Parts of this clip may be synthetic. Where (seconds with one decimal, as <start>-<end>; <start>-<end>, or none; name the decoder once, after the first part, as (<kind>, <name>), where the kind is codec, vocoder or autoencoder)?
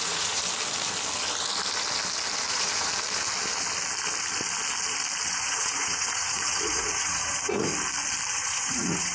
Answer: 0.0-0.4 (vocoder, Vocos); 2.5-2.9; 5.3-7.7; 8.3-9.1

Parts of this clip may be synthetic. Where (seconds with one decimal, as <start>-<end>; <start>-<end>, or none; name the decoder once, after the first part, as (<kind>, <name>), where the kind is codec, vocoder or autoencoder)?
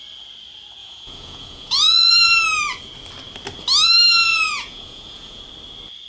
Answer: 0.8-2.1 (vocoder, Vocos); 4.3-5.4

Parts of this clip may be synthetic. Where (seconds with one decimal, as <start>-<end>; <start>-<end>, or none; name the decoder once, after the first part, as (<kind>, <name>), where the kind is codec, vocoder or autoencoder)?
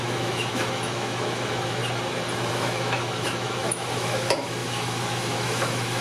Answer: 0.0-1.8 (autoencoder, DAC-VAE); 2.5-6.0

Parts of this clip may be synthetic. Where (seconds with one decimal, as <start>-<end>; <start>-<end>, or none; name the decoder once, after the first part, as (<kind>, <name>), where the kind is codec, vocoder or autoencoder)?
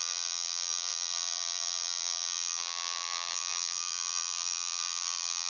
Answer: 0.0-5.5 (vocoder, BigVGAN v2)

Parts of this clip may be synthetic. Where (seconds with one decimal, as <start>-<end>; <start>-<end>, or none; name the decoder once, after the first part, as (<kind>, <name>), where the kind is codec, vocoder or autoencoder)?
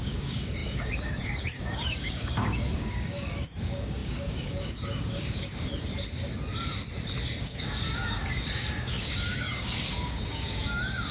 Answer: 0.0-5.7 (codec, DAC); 7.4-11.1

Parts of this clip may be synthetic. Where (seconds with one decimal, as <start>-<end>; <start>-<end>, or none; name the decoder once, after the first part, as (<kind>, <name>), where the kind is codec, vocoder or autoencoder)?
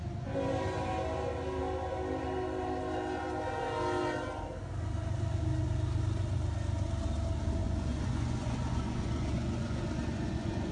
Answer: 7.6-10.7 (vocoder, Vocos)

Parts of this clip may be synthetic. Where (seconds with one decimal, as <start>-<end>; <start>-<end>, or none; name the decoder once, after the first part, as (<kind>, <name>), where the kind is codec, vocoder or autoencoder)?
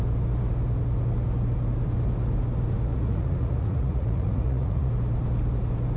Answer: 2.9-4.9 (vocoder, Vocos)